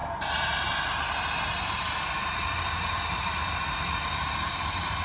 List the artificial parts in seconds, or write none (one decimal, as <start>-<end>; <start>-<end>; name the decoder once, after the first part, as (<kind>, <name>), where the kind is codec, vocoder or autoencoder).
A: none